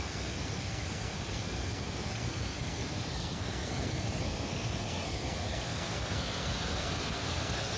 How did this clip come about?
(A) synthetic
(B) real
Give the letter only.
A